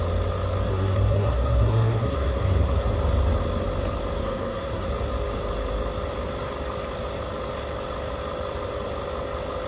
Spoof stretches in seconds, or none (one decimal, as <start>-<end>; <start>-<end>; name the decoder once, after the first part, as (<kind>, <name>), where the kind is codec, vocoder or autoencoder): 0.7-2.8 (codec, SNAC); 4.2-4.9